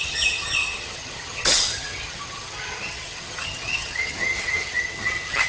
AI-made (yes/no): yes